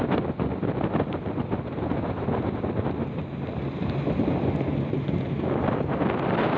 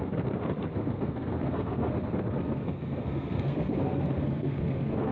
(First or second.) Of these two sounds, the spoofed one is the second